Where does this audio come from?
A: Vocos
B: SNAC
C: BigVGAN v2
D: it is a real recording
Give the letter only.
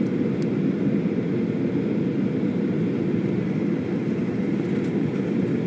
D